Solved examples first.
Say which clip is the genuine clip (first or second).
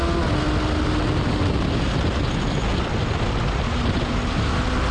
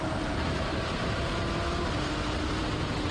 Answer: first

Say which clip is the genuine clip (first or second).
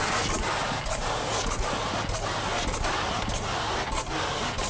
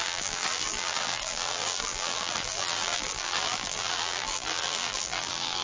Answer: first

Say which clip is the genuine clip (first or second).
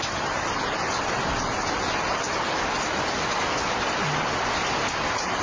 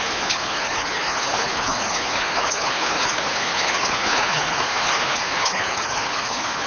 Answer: first